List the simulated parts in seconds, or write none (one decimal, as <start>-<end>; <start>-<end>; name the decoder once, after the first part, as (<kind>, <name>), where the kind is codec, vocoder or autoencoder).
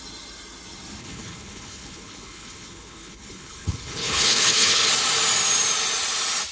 1.0-4.9 (codec, HILCodec)